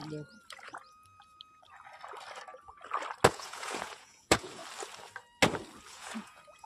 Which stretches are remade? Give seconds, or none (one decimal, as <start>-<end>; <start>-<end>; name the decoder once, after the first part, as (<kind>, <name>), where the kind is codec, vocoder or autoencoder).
3.3-4.6 (vocoder, Vocos); 5.9-6.7